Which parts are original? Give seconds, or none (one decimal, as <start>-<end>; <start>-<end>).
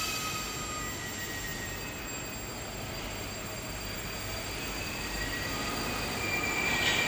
0.0-7.1